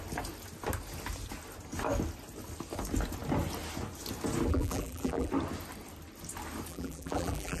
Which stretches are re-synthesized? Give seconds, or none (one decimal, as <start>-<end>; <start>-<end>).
4.5-5.3; 6.7-7.6